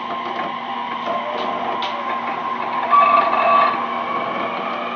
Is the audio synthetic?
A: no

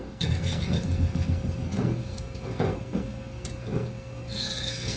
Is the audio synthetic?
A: yes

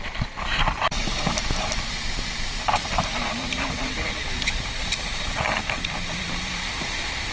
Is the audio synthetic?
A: yes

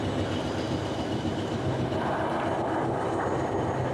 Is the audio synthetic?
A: no